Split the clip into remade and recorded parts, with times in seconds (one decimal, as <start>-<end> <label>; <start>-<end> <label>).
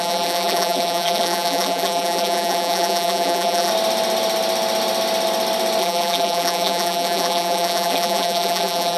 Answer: 0.0-3.7 remade; 3.7-5.8 recorded; 5.8-9.0 remade